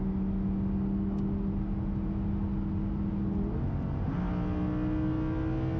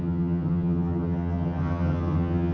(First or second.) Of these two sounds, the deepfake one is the second